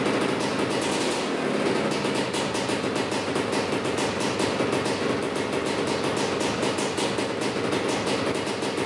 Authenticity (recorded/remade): recorded